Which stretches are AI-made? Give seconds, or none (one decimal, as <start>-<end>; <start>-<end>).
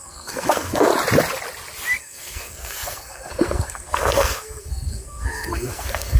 0.0-0.9; 2.0-6.2